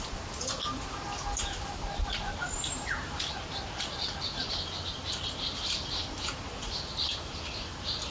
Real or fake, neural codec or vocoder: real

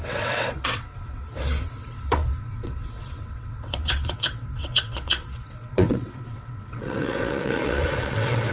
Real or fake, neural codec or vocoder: fake, vocoder, WaveNeXt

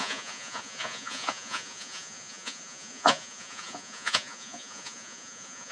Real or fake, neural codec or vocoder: fake, vocoder, Vocos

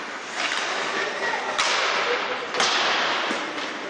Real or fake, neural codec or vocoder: real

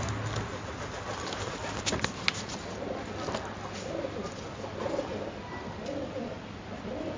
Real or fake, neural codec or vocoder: real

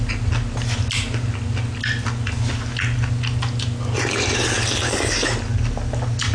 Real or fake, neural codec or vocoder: real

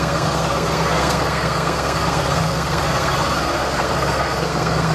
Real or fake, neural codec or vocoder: fake, codec, SNAC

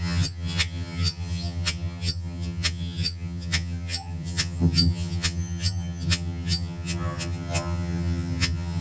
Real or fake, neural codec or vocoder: fake, vocoder, HiFi-GAN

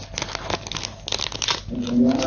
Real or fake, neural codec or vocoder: real